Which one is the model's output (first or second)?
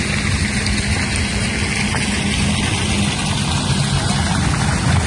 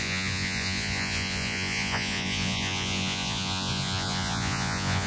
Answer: second